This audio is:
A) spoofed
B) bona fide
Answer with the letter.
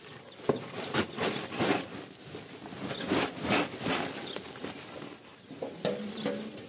B